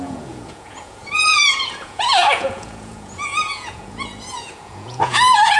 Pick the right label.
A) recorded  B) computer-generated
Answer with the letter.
B